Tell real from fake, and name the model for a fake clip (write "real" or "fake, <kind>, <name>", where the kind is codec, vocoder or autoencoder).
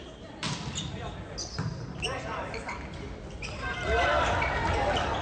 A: real